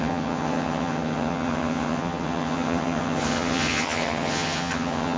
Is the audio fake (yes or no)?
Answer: yes